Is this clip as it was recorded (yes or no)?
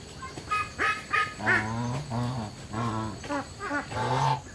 yes